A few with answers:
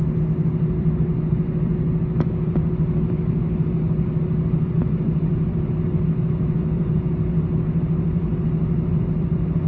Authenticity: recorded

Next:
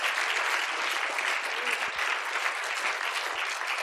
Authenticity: recorded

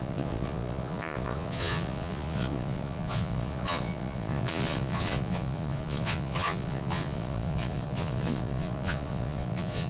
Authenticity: remade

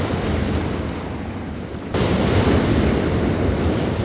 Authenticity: recorded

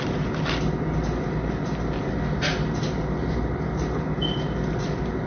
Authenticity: recorded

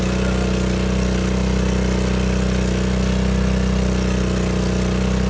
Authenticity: recorded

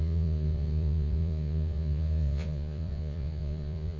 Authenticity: remade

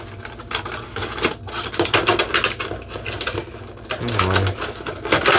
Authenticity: recorded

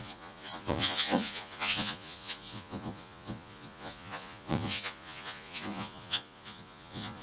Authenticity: remade